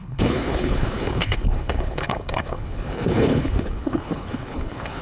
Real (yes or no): no